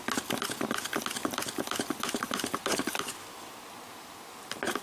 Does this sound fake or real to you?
real